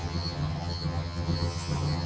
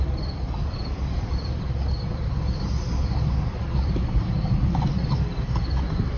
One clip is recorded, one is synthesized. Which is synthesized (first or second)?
first